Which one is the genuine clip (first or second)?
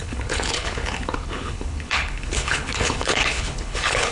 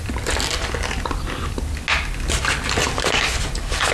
second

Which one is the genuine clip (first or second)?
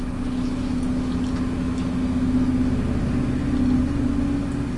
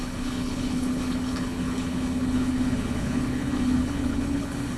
first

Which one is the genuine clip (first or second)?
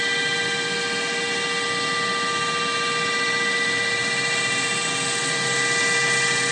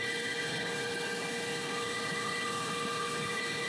first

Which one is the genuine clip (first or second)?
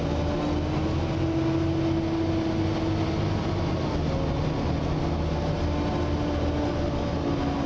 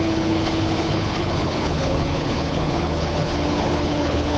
first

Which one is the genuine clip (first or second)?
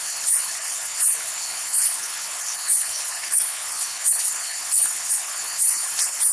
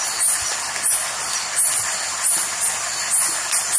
second